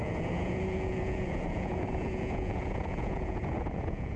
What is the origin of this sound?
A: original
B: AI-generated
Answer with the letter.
B